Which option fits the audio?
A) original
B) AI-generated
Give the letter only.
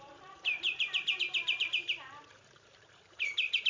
B